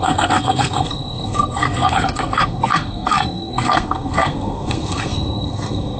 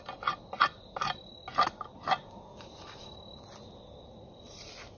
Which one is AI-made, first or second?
first